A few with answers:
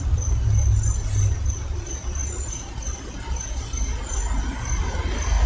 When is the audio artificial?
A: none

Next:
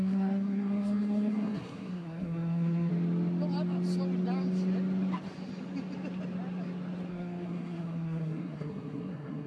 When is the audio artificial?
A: 0.0-2.9; 7.1-9.5

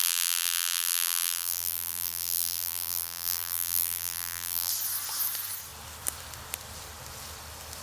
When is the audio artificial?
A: 0.0-4.7

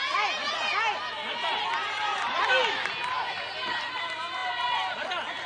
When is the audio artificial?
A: none

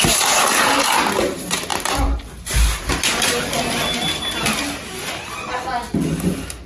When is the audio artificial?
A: 1.7-3.6